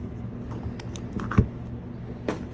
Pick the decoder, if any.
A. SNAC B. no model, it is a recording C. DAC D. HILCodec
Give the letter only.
B